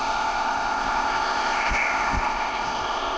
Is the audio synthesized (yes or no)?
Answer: yes